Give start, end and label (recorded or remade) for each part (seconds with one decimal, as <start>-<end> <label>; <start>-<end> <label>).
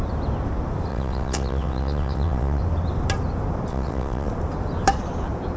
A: 0.0-0.9 recorded; 0.9-2.6 remade; 2.6-3.7 recorded; 3.7-4.3 remade; 4.3-5.6 recorded